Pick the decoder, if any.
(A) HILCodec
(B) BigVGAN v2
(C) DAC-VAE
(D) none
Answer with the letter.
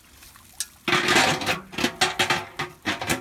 D